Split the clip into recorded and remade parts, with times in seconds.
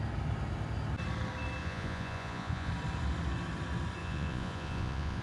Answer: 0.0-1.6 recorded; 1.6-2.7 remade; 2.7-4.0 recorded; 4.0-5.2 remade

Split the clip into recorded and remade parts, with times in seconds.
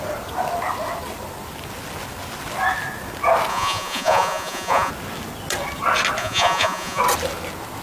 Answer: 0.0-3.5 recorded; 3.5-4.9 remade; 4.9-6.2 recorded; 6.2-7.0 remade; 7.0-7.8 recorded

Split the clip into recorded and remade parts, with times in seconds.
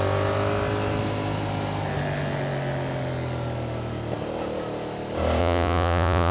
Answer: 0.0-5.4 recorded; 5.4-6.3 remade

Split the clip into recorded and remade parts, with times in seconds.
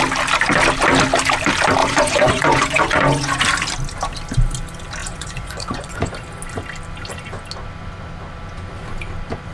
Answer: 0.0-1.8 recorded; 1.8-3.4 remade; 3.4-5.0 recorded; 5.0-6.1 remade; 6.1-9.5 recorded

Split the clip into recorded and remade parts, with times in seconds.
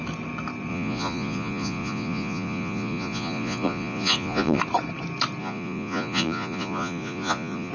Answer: 0.0-0.7 recorded; 0.7-4.6 remade; 4.6-5.4 recorded; 5.4-7.7 remade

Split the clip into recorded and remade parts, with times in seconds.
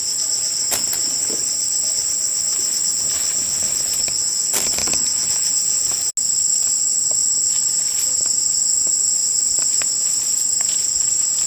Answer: 0.0-4.8 recorded; 4.8-5.9 remade; 5.9-11.5 recorded